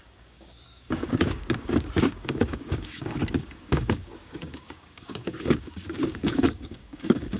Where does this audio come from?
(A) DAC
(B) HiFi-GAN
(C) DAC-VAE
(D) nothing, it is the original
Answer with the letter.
A